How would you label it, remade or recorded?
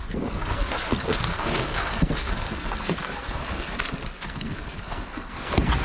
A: remade